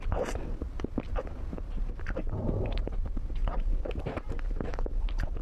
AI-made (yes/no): yes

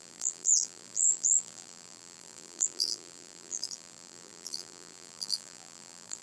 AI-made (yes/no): yes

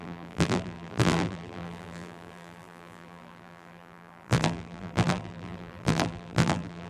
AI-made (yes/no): yes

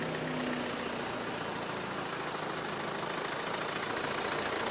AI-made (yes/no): no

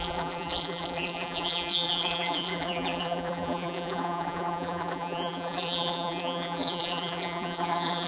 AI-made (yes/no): yes